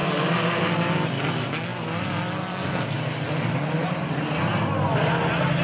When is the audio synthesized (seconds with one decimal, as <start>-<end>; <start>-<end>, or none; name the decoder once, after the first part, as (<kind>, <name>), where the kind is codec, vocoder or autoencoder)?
none